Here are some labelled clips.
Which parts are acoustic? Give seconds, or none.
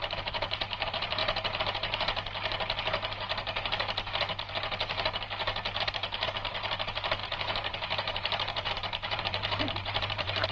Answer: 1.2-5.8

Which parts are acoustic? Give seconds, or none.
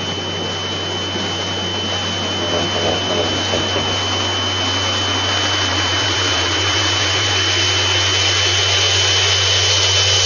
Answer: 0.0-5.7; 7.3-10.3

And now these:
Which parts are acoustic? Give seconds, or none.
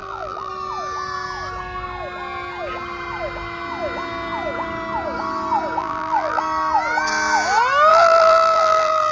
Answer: 0.5-5.8; 6.4-7.9